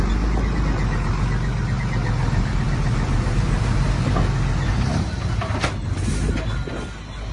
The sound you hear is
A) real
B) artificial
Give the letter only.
A